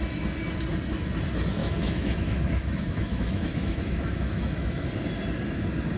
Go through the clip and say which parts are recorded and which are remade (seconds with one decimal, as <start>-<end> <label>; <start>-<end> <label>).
0.0-1.6 recorded; 1.6-4.9 remade; 4.9-6.0 recorded